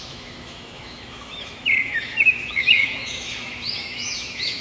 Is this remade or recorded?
remade